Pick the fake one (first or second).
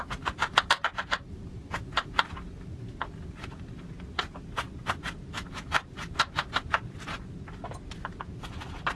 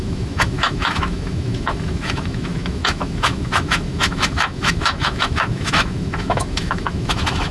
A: second